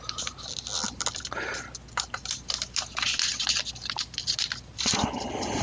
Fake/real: real